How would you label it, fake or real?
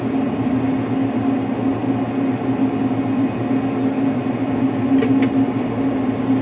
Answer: real